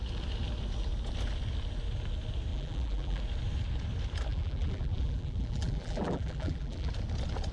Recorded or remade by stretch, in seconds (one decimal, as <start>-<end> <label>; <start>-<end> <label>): 0.0-2.5 recorded; 2.5-3.2 remade; 3.2-4.3 recorded; 4.3-6.9 remade; 6.9-7.5 recorded